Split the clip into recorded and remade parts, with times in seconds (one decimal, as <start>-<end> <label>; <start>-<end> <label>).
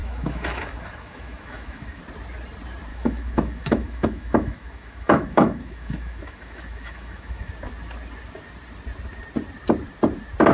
0.0-2.0 remade; 2.0-2.9 recorded; 2.9-7.5 remade; 7.5-10.5 recorded